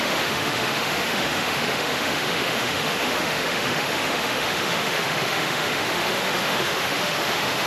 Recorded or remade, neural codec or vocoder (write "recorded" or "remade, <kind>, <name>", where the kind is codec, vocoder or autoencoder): remade, autoencoder, DAC-VAE